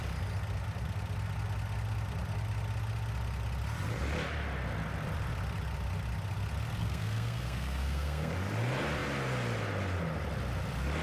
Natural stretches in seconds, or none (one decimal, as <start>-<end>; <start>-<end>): 0.0-6.8; 8.3-11.0